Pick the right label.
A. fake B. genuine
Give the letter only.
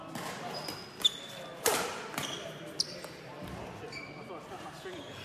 B